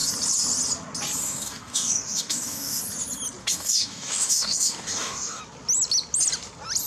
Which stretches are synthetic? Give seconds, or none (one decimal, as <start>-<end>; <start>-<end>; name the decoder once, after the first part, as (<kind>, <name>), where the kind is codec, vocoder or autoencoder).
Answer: 1.2-2.8 (codec, DAC); 3.4-5.4